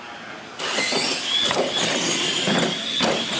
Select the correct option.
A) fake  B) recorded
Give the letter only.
B